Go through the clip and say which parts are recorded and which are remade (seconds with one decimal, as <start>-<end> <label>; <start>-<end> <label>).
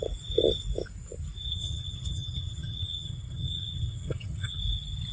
0.0-1.5 recorded; 1.5-4.6 remade; 4.6-5.1 recorded